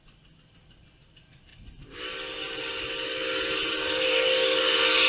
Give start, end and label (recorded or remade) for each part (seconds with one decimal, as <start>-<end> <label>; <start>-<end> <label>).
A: 0.0-5.1 recorded